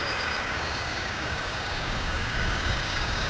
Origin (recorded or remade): remade